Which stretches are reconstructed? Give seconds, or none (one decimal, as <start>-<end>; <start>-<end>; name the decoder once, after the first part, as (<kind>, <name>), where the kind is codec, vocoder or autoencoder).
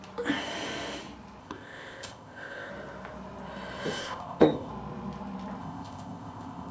1.4-2.7 (codec, ZipCodec); 4.0-4.7; 5.6-6.7